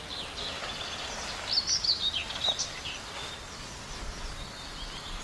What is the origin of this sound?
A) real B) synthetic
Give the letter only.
A